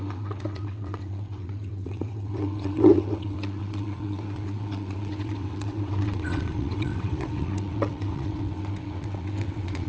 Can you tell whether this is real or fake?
fake